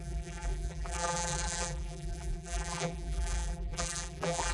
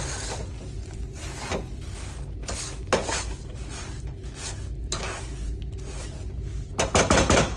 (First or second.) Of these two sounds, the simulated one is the first